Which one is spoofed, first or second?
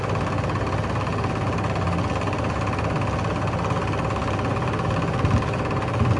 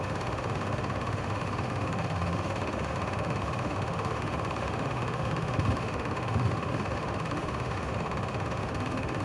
second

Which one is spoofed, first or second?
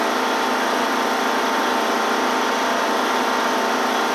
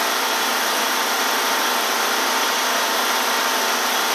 second